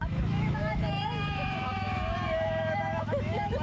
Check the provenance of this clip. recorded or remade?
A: remade